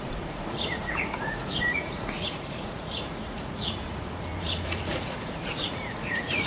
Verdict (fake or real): fake